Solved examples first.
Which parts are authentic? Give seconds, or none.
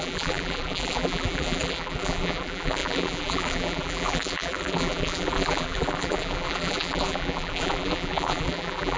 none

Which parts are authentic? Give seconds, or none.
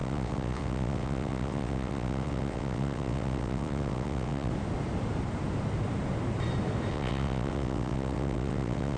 4.5-6.9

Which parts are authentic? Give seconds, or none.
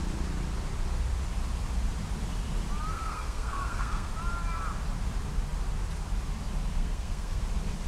0.0-2.9; 4.1-6.8; 7.4-7.9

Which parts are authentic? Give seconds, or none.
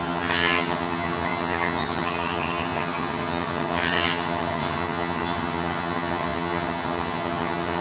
none